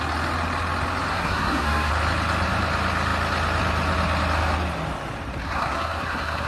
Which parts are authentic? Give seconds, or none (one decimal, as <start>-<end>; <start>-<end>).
0.0-1.1; 1.9-5.4